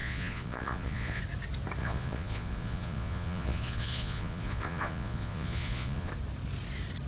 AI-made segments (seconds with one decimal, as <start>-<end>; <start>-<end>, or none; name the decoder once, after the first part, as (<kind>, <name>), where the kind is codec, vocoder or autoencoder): 0.0-1.2 (vocoder, Vocos); 1.8-6.1